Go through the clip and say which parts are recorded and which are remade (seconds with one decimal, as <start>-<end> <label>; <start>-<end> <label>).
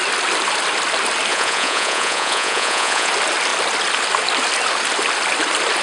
0.0-1.3 recorded; 1.3-3.1 remade; 3.1-5.8 recorded